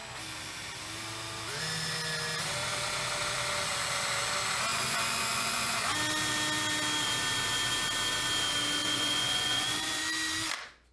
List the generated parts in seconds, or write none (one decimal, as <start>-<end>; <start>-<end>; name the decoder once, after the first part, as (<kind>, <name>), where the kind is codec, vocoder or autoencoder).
4.7-5.9 (vocoder, Vocos); 8.8-10.0